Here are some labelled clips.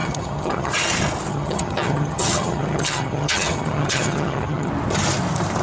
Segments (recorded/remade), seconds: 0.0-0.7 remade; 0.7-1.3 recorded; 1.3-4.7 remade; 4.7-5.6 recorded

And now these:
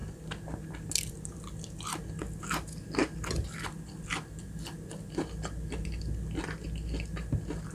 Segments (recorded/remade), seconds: 0.0-7.7 recorded

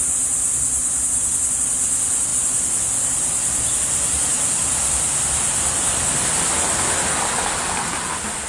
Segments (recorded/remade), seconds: 0.0-8.5 recorded